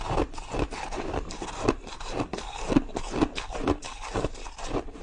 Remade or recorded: recorded